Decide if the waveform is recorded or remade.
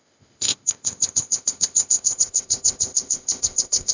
remade